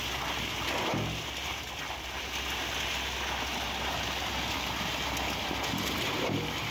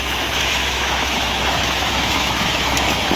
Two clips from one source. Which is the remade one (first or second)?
second